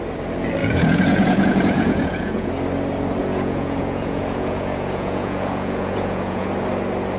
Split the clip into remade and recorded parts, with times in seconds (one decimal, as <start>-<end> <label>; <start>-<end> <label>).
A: 0.0-0.6 recorded; 0.6-2.5 remade; 2.5-3.2 recorded; 3.2-6.5 remade; 6.5-7.2 recorded